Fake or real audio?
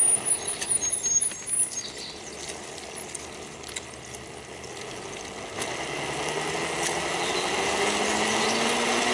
real